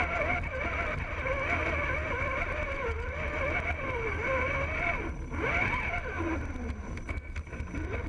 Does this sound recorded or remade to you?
recorded